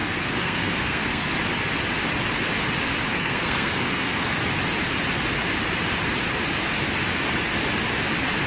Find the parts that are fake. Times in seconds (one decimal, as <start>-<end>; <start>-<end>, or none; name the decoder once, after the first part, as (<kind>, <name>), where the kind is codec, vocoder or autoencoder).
0.0-1.3 (codec, SNAC); 3.1-4.4